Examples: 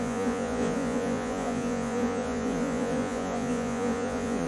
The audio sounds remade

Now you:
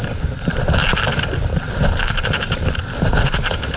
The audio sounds recorded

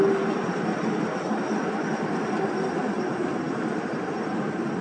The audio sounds recorded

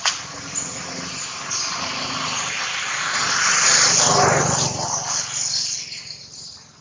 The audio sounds recorded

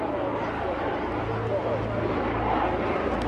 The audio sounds recorded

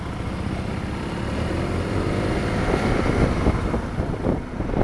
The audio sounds remade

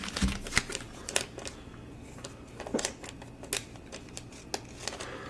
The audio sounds recorded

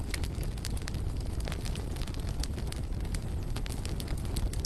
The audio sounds recorded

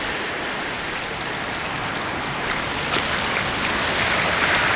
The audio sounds recorded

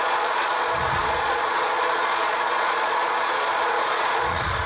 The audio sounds remade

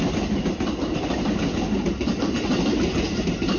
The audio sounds recorded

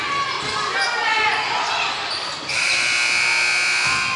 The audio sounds recorded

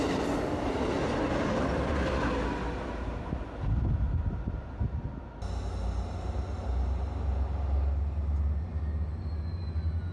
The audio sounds recorded